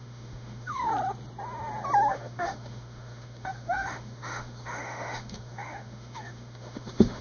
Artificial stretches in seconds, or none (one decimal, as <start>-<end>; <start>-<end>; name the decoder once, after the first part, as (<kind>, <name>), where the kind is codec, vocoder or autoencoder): 0.0-0.9 (autoencoder, DAC-VAE); 2.1-7.2